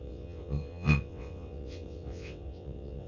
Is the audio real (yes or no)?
no